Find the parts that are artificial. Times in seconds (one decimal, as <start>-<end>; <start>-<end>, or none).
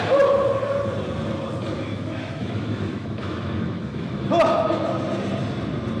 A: 1.9-4.3